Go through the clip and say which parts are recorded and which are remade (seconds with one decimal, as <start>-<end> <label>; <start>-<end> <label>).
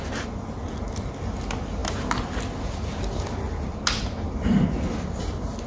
0.0-5.7 recorded